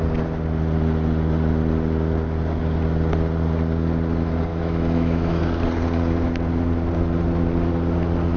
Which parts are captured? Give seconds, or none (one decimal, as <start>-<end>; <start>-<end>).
0.0-4.5; 5.4-8.4